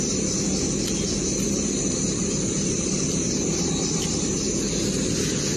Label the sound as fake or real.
real